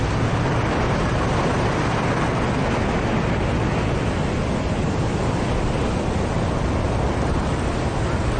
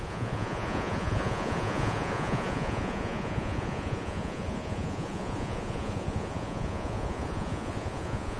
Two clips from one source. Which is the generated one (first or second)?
second